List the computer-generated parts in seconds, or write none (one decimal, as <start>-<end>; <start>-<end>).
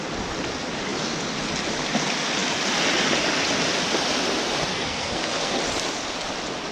4.7-5.6